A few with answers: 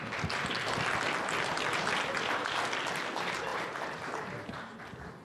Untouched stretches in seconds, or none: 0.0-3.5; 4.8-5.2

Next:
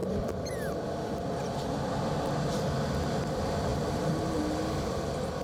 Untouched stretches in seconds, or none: 0.0-3.7; 4.4-5.4

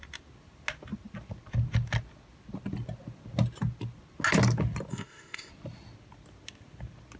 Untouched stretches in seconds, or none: 0.0-4.9; 5.5-7.2

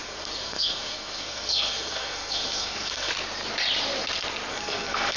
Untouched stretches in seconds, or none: 3.1-4.5

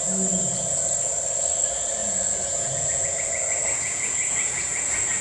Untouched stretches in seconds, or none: 0.0-2.0

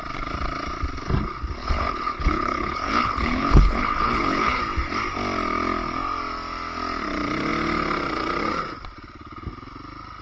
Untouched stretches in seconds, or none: 0.0-1.6; 4.6-10.2

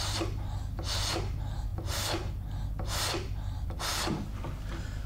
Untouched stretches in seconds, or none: 0.0-5.1

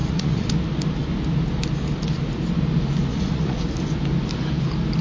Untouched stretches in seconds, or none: 0.5-3.1; 3.6-5.0